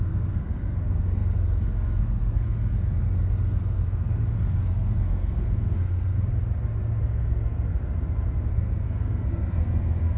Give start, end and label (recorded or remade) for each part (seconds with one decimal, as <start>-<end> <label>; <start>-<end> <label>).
0.0-6.3 remade; 6.3-7.0 recorded; 7.0-7.7 remade; 7.7-8.5 recorded; 8.5-10.2 remade